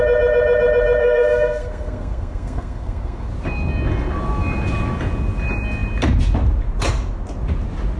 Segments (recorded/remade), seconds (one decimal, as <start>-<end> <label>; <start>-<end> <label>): 0.0-1.0 recorded; 1.0-3.3 remade; 3.3-8.0 recorded